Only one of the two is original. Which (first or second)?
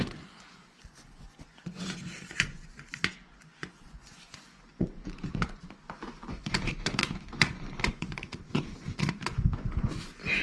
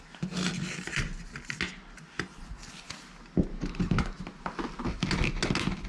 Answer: second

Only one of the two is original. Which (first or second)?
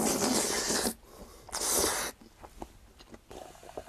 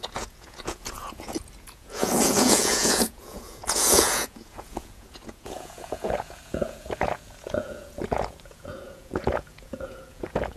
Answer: first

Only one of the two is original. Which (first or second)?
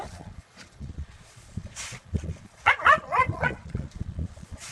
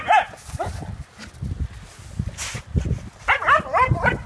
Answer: second